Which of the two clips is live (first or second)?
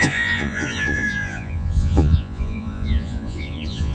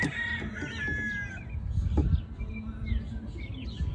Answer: second